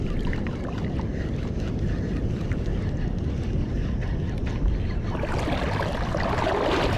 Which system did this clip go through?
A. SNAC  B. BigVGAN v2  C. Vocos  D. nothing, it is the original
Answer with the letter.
D